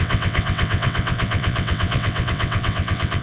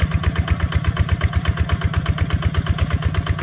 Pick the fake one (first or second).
first